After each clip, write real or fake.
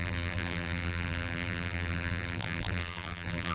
fake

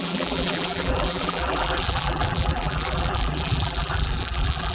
fake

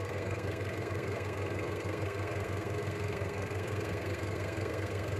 fake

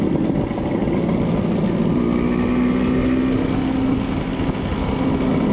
real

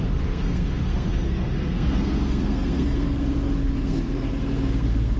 fake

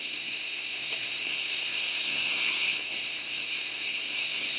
fake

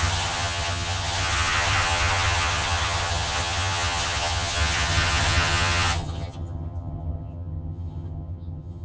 fake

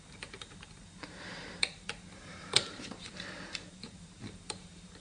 fake